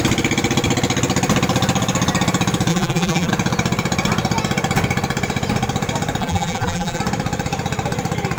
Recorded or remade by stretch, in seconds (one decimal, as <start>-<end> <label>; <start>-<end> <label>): 0.0-2.7 recorded; 2.7-3.3 remade; 3.3-6.2 recorded; 6.2-7.0 remade; 7.0-8.4 recorded